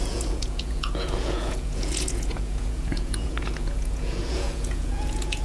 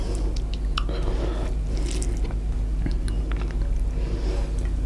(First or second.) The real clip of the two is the second